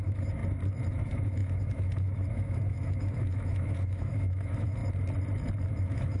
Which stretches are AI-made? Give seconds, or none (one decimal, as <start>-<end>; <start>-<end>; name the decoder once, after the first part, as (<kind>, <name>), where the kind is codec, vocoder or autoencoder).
0.0-0.4 (autoencoder, DAC-VAE); 0.9-4.8; 5.7-6.2